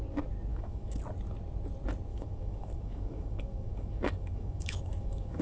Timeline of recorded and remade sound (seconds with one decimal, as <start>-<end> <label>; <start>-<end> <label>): 0.0-0.5 recorded; 0.5-1.0 remade; 1.0-2.1 recorded; 2.1-5.4 remade